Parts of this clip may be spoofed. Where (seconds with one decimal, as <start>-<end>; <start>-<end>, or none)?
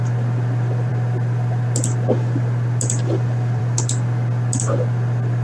none